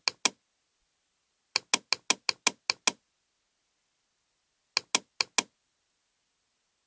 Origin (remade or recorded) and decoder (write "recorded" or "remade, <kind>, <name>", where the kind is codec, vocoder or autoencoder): recorded